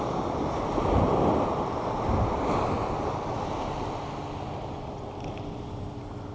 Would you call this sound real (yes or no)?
yes